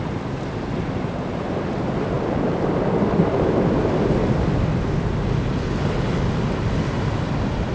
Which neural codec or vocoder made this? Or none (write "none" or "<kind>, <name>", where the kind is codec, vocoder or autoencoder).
none